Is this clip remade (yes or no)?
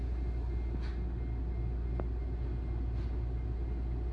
no